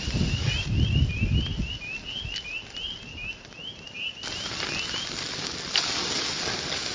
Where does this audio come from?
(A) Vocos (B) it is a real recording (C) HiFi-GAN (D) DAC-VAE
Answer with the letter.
B